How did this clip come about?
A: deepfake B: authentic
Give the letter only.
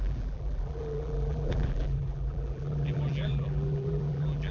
A